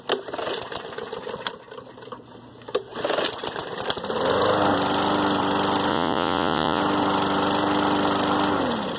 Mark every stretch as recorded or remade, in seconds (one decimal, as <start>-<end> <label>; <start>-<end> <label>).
0.0-5.9 recorded; 5.9-6.8 remade; 6.8-9.0 recorded